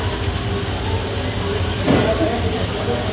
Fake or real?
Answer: real